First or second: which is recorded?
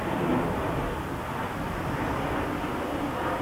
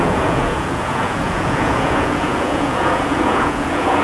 first